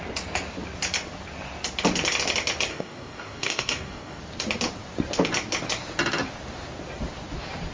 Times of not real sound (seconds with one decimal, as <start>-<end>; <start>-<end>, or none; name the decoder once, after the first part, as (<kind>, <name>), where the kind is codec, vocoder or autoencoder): 2.7-4.2 (codec, DAC)